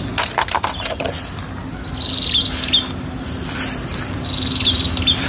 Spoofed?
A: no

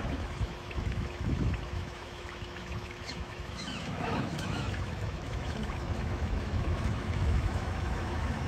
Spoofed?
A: yes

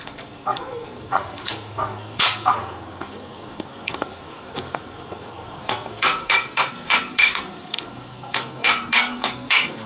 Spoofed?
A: yes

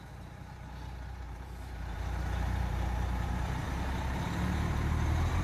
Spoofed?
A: yes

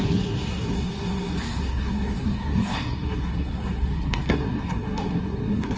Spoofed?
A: yes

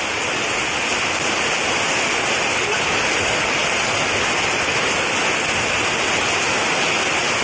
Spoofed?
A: no